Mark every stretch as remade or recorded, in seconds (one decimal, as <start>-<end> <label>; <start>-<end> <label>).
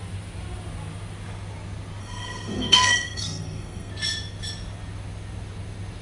0.0-2.0 recorded; 2.0-3.9 remade; 3.9-6.0 recorded